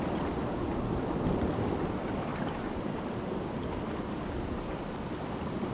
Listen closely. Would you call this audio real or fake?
fake